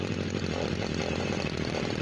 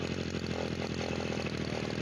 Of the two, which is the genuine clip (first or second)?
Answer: second